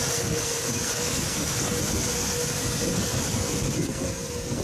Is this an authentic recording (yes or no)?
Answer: no